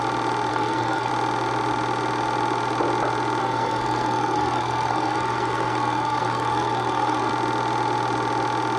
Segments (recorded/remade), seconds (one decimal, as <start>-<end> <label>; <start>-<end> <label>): 0.0-0.5 recorded; 0.5-1.1 remade; 1.1-3.4 recorded; 3.4-7.3 remade; 7.3-8.8 recorded